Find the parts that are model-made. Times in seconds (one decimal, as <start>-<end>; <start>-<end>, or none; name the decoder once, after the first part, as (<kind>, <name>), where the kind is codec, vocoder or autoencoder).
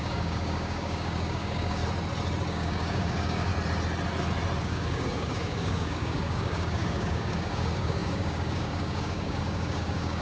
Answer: 0.0-1.8 (codec, DAC); 2.5-3.5; 4.6-10.2